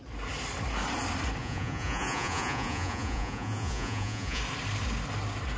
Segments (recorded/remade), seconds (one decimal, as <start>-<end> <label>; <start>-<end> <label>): 0.0-1.4 recorded; 1.4-4.4 remade; 4.4-5.6 recorded